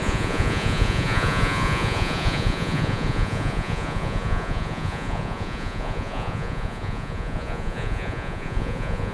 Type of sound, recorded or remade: remade